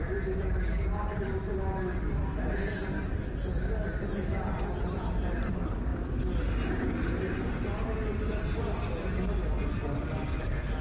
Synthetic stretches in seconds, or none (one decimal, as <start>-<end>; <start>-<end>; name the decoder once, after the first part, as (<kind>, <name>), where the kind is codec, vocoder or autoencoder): none